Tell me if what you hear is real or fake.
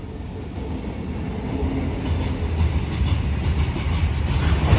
real